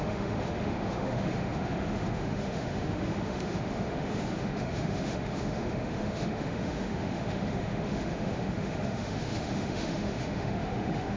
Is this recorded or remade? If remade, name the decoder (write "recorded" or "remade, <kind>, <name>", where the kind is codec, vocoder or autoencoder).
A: remade, autoencoder, DAC-VAE